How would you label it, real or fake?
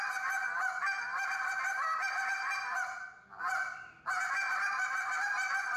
real